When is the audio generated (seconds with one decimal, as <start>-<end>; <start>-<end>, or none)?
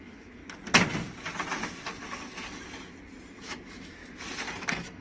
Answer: 0.0-0.4; 3.4-4.0; 4.6-5.0